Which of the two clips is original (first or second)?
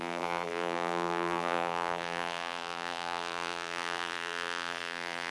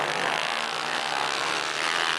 second